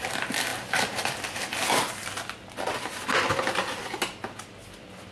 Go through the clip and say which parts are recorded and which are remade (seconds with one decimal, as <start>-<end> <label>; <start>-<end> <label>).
0.0-5.1 recorded